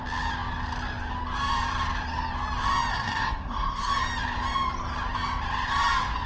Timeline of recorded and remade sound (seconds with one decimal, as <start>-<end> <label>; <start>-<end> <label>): 0.0-2.9 recorded; 2.9-3.9 remade; 3.9-6.3 recorded